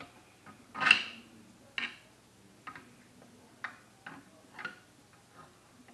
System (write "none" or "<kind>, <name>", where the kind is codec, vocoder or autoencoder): none